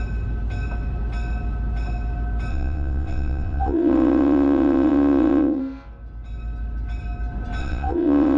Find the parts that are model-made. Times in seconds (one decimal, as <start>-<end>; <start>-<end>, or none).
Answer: 2.5-5.6; 7.6-8.4